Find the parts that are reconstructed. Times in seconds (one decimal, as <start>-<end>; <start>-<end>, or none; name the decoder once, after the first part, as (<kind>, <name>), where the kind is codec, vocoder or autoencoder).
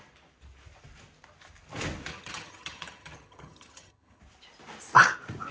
2.1-4.2 (vocoder, HiFi-GAN)